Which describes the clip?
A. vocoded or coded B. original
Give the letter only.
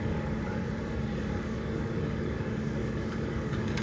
A